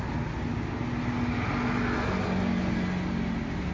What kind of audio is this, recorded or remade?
recorded